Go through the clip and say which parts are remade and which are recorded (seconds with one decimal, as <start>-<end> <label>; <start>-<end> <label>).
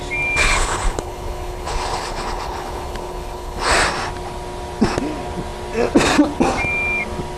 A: 0.0-0.4 recorded; 0.4-3.7 remade; 3.7-7.4 recorded